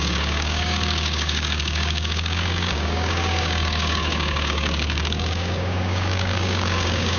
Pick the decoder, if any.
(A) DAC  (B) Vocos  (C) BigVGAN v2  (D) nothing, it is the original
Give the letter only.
A